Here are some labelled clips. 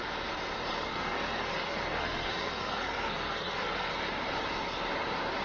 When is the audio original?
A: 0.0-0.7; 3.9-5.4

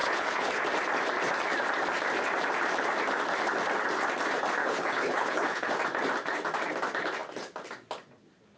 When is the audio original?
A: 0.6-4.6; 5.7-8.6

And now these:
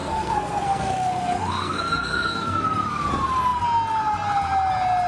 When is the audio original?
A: 3.1-5.1

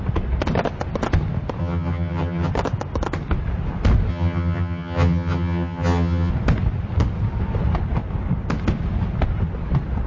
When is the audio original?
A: 0.0-1.6; 2.5-4.1; 6.3-10.1

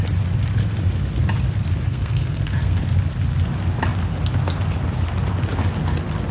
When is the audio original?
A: 0.0-1.9; 2.8-6.3